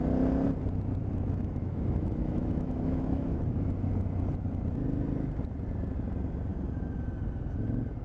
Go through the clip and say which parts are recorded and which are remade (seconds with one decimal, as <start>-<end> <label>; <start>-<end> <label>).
0.0-1.0 recorded; 1.0-3.7 remade; 3.7-8.0 recorded